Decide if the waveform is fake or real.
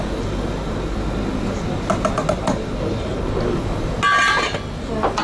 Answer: real